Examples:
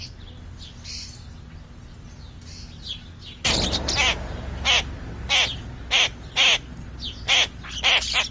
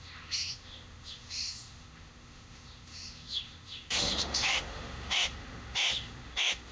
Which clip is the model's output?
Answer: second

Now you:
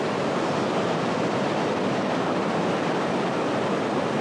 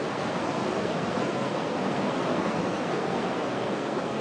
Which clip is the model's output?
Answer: second